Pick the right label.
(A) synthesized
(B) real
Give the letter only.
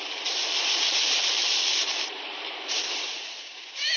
A